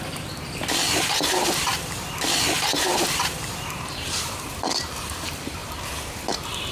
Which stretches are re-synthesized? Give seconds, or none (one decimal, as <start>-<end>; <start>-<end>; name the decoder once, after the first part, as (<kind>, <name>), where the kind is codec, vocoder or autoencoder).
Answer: 0.0-5.6 (vocoder, BigVGAN v2)